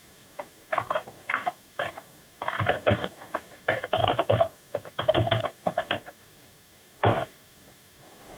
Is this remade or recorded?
remade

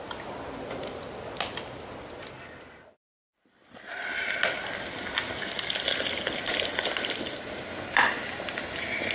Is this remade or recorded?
recorded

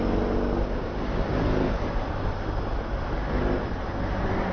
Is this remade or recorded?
recorded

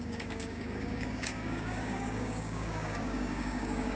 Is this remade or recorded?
remade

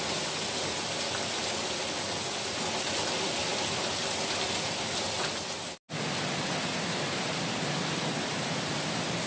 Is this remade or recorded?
recorded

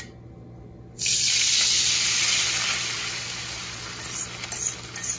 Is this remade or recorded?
recorded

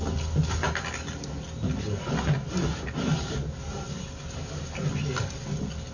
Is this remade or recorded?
recorded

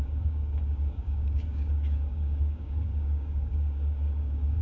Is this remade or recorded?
remade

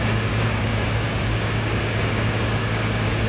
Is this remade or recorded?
remade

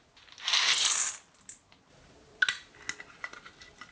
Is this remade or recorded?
recorded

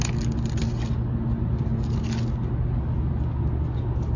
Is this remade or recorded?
recorded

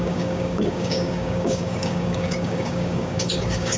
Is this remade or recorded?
remade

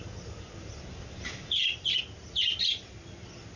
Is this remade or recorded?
recorded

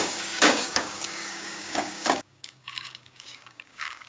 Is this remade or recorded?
remade